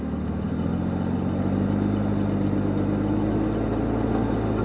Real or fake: real